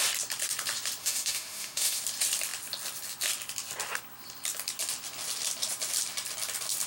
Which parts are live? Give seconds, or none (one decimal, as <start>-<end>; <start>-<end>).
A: 0.0-1.0; 2.0-6.9